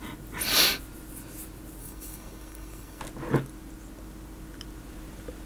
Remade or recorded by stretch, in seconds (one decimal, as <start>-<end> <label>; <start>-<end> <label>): 0.0-1.8 recorded; 1.8-3.0 remade; 3.0-5.5 recorded